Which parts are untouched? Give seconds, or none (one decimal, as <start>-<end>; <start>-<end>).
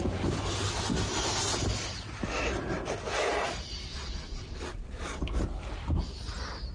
0.0-3.9; 5.2-6.7